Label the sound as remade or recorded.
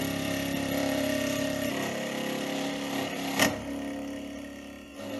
remade